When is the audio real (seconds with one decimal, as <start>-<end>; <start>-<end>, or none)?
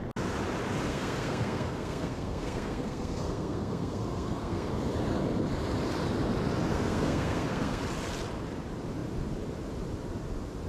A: 0.0-0.9; 4.7-6.7; 7.8-10.7